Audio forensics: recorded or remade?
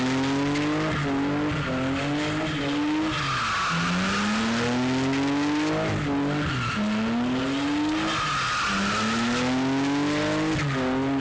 recorded